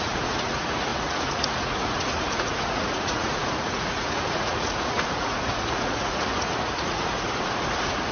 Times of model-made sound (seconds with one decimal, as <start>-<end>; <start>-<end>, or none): 0.0-8.1